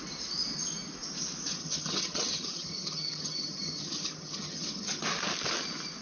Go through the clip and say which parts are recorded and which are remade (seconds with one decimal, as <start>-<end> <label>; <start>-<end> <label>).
0.0-1.6 recorded; 1.6-5.0 remade; 5.0-6.0 recorded